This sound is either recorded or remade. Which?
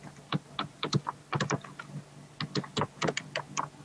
recorded